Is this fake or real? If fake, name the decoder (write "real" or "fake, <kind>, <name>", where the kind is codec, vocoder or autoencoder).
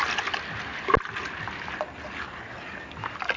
real